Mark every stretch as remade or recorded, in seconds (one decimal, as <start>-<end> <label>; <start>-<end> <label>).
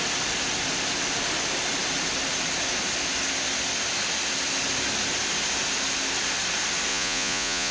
0.0-6.9 recorded; 6.9-7.7 remade